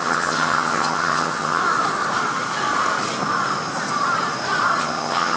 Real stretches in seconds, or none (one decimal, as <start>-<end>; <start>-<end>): 1.6-4.8